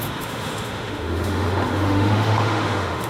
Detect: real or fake fake